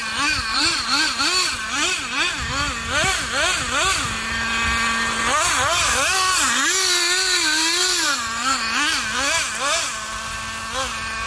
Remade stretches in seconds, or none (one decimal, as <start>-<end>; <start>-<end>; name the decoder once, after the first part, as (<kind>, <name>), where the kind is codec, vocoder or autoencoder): 0.5-1.2 (vocoder, BigVGAN v2); 7.8-8.6